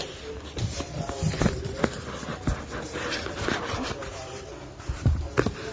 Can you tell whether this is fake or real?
real